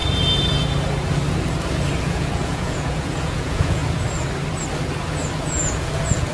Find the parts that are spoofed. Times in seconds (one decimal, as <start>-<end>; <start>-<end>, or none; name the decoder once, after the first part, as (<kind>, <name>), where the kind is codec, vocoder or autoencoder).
2.0-3.8 (vocoder, Vocos); 5.5-6.3